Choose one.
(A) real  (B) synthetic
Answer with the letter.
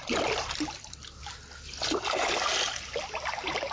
A